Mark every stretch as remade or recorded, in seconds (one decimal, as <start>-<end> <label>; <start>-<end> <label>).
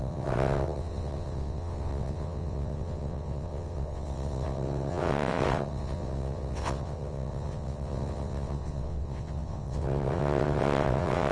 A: 0.0-11.3 remade